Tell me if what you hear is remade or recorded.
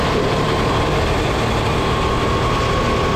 recorded